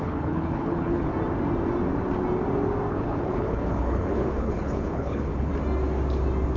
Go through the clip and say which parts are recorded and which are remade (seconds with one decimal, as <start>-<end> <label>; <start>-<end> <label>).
0.0-1.1 remade; 1.1-2.9 recorded; 2.9-5.5 remade; 5.5-6.6 recorded